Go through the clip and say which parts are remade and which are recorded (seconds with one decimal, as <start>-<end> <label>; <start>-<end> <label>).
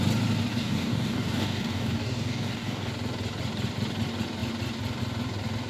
0.0-0.5 recorded; 0.5-2.9 remade; 2.9-5.7 recorded